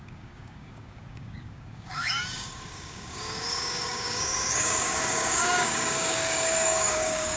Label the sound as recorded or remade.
remade